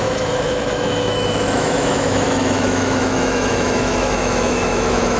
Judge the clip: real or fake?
fake